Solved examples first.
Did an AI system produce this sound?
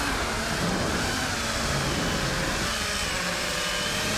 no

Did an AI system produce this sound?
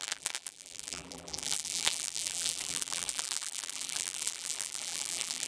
yes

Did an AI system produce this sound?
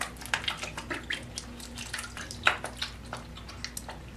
no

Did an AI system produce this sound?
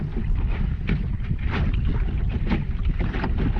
no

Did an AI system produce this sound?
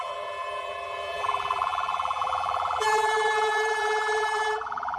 yes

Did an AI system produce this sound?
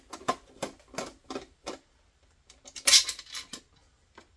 no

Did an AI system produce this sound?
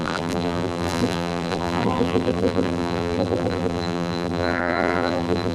yes